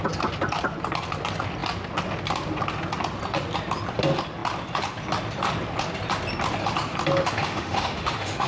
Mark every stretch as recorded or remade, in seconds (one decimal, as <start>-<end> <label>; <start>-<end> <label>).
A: 0.0-7.2 recorded; 7.2-8.5 remade